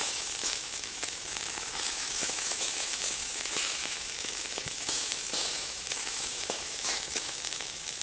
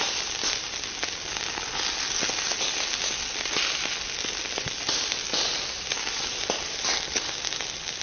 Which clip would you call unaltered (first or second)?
second